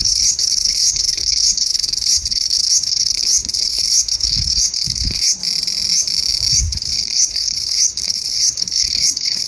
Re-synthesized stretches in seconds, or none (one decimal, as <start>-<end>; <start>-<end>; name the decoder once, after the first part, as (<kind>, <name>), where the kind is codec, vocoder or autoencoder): 0.0-5.4 (codec, HILCodec); 6.5-9.5